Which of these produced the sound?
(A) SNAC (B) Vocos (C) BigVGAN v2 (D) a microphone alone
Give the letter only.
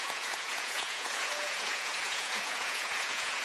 B